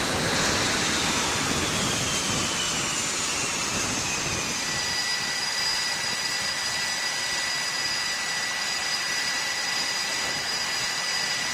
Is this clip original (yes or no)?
yes